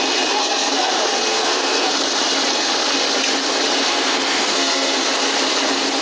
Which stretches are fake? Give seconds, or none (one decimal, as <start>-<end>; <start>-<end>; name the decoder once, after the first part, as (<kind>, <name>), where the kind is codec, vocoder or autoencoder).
0.4-0.9 (codec, SNAC); 1.3-1.9; 3.9-5.1